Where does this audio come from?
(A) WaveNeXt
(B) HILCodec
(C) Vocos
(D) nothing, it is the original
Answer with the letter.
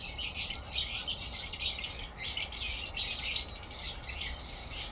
D